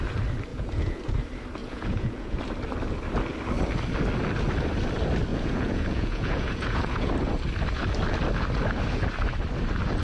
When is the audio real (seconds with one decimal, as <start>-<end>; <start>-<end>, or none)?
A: 0.0-0.5; 1.0-1.6; 2.4-5.3; 7.1-10.0